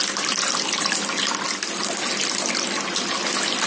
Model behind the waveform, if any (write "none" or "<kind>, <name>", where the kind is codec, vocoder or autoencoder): none